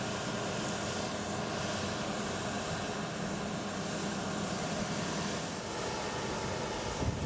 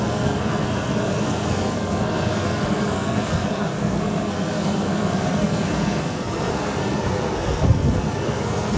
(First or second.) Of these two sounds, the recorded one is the first